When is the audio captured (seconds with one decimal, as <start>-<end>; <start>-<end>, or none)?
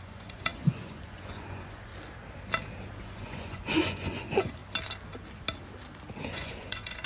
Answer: 1.9-3.0; 4.6-6.3